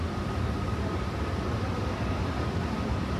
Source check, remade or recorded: recorded